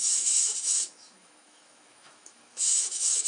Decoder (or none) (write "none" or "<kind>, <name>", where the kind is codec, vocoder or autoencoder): autoencoder, DAC-VAE